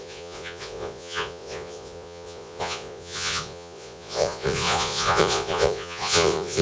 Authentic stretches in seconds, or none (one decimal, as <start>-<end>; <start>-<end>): none